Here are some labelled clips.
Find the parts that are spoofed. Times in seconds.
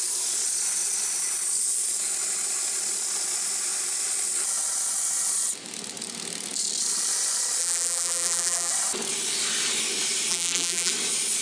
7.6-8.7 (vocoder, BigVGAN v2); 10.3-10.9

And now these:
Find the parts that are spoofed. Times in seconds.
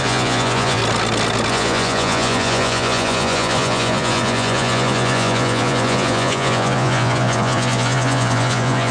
0.0-0.8 (vocoder, Vocos); 1.5-8.9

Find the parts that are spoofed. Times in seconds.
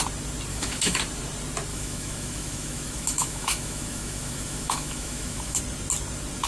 0.5-1.0 (autoencoder, DAC-VAE); 1.7-5.6